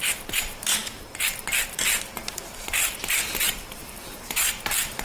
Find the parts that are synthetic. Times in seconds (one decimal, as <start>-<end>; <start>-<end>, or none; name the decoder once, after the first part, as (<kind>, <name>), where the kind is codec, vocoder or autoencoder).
0.0-0.8 (vocoder, BigVGAN v2); 1.5-5.0